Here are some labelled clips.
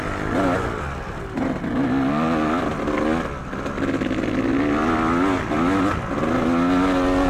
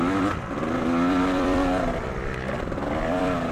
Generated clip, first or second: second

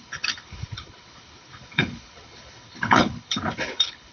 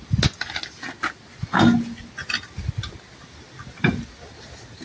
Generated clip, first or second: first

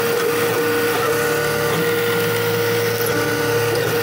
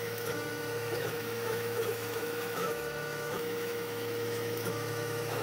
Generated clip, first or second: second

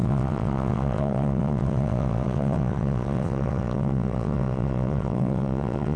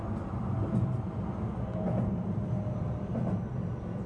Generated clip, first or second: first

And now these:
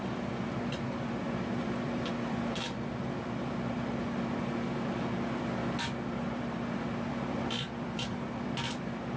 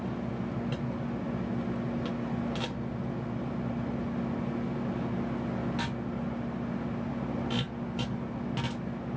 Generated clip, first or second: first